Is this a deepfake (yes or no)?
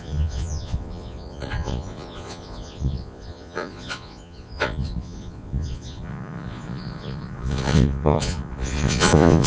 yes